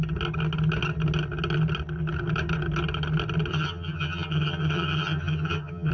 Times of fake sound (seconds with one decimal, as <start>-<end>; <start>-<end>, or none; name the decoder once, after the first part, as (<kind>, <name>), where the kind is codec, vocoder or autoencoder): 3.5-5.9 (vocoder, HiFi-GAN)